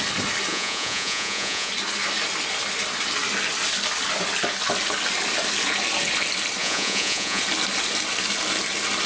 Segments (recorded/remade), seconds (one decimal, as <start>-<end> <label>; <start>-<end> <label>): 0.0-0.5 recorded; 0.5-1.7 remade; 1.7-6.6 recorded; 6.6-7.4 remade; 7.4-9.1 recorded